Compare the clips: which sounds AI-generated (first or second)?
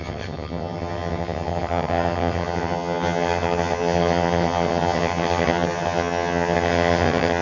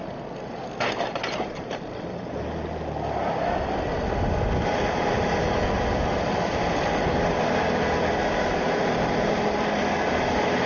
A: first